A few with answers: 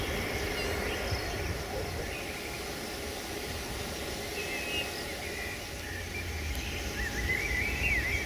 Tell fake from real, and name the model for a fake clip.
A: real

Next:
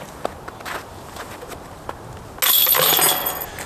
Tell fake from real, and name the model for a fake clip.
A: real